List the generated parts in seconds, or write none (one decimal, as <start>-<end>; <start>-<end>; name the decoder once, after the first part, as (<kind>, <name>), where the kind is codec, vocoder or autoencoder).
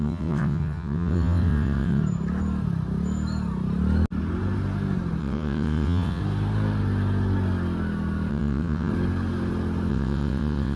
0.0-2.0 (vocoder, WaveNeXt); 5.2-6.2; 8.3-8.9; 9.9-10.8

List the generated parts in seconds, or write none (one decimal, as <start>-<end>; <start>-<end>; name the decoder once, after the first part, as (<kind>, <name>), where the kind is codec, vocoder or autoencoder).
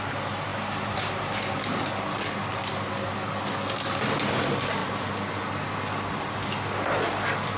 none